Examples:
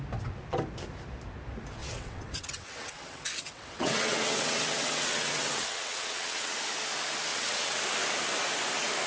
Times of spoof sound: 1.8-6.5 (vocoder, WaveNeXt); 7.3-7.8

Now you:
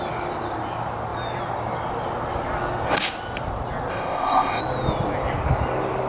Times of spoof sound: 3.9-4.6 (codec, ZipCodec)

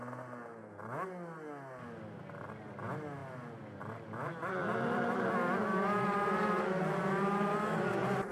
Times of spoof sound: none

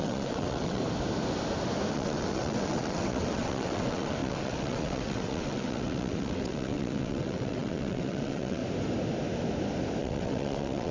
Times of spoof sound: 0.0-0.8 (vocoder, WaveNeXt); 1.9-8.6; 10.0-10.9